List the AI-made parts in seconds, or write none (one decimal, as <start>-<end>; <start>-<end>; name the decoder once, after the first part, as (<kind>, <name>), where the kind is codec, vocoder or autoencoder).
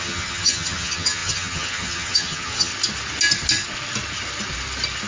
0.0-2.7 (vocoder, HiFi-GAN)